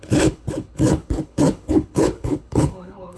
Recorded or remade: remade